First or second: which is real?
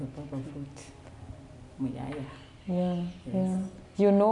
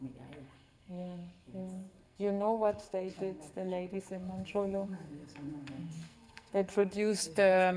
first